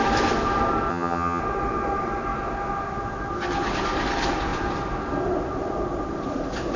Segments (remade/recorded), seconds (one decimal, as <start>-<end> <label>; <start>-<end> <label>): 0.0-0.9 recorded; 0.9-1.4 remade; 1.4-6.8 recorded